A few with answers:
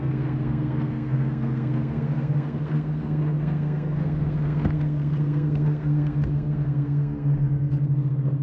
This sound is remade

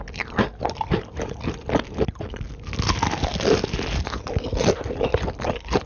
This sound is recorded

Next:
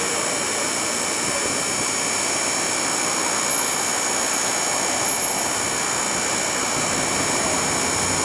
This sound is recorded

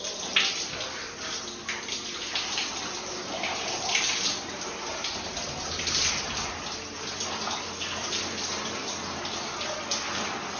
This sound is recorded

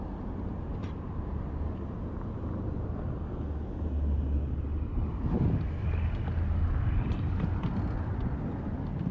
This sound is recorded